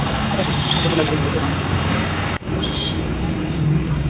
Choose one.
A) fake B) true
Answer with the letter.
A